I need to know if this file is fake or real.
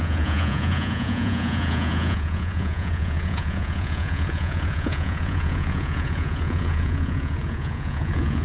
fake